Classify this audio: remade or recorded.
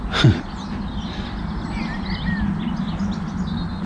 recorded